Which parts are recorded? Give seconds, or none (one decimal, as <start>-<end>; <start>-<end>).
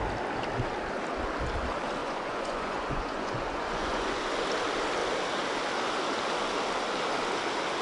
0.0-2.0; 4.2-7.8